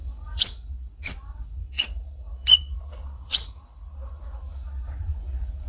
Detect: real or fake fake